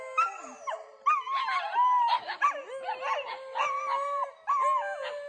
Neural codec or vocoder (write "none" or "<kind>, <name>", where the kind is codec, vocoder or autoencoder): none